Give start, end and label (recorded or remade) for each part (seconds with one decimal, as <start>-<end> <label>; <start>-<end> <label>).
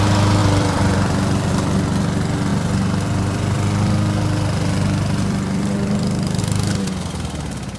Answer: 0.0-0.4 recorded; 0.4-1.5 remade; 1.5-2.5 recorded; 2.5-6.4 remade; 6.4-7.8 recorded